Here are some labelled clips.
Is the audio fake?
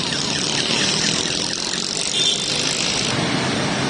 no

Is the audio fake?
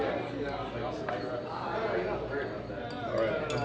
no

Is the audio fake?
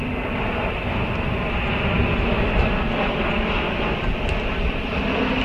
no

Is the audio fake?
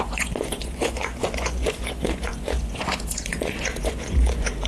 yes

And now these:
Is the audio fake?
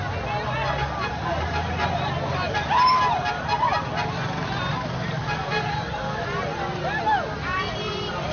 no